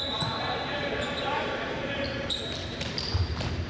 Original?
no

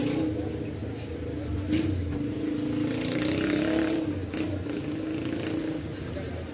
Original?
yes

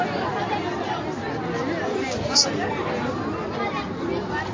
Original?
yes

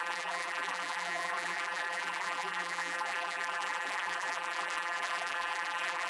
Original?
no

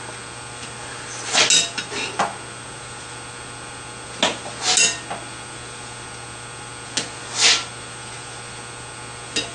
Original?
yes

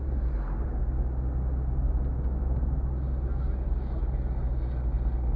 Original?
yes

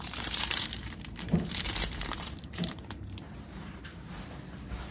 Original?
no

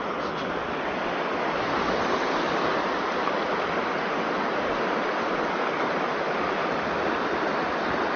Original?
yes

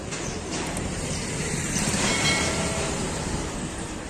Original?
no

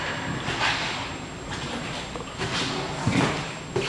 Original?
yes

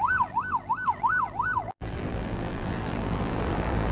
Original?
no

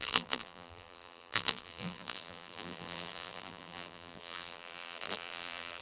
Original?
no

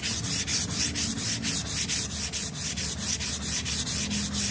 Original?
yes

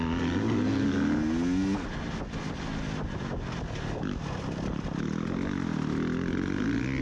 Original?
yes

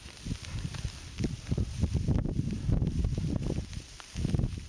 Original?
no